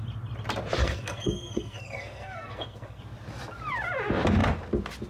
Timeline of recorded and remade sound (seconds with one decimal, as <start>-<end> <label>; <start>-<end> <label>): 0.0-0.8 recorded; 0.8-3.0 remade; 3.0-5.1 recorded